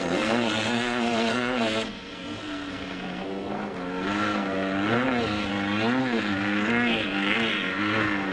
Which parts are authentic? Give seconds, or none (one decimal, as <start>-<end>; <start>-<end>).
5.5-6.0